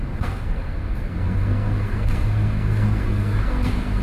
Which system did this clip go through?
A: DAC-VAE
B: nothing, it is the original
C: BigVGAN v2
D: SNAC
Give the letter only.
D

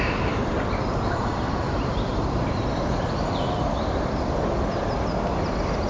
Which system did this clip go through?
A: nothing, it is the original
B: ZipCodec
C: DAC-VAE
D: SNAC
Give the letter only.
A